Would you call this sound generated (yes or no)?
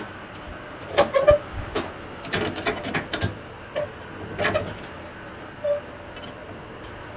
no